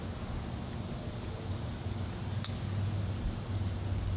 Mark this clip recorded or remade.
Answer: recorded